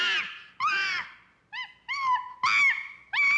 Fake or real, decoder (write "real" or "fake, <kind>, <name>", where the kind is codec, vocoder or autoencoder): real